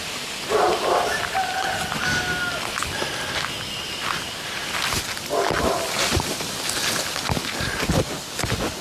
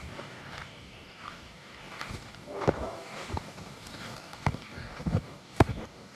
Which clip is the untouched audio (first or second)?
first